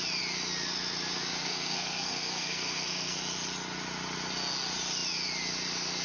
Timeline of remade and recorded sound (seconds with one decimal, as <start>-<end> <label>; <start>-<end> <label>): 0.0-1.4 recorded; 1.4-3.2 remade; 3.2-6.0 recorded